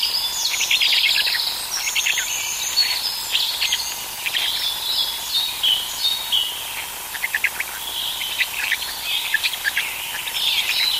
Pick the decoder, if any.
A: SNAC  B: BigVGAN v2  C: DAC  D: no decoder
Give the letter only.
D